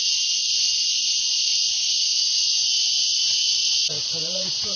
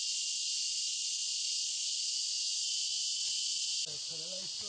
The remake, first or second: first